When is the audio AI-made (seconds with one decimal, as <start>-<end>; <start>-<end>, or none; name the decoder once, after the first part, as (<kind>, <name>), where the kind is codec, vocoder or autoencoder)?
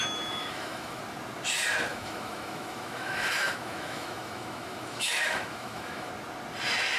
0.0-1.0 (autoencoder, DAC-VAE); 1.9-6.1